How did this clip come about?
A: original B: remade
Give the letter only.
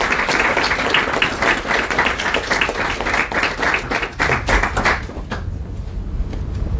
A